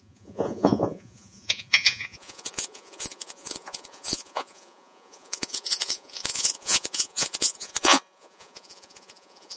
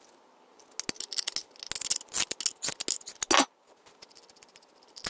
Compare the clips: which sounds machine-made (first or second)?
first